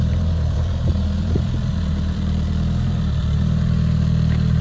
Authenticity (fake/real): fake